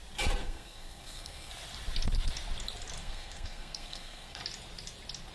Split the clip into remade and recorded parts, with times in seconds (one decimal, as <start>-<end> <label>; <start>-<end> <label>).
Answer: 0.0-0.4 recorded; 0.4-1.5 remade; 1.5-3.0 recorded; 3.0-4.4 remade; 4.4-5.3 recorded